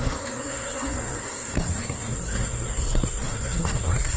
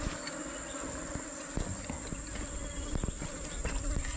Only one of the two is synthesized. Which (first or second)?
first